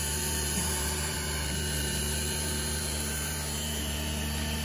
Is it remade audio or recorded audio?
remade